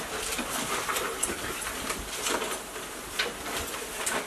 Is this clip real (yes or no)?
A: yes